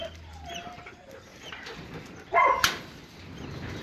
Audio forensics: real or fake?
real